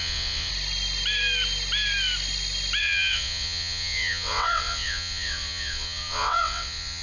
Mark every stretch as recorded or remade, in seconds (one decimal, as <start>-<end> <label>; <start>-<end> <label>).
0.0-0.5 remade; 0.5-2.8 recorded; 2.8-7.0 remade